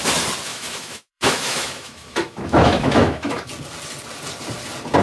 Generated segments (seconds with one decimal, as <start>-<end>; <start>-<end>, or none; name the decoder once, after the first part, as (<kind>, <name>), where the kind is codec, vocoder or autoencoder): 0.5-3.5 (autoencoder, DAC-VAE)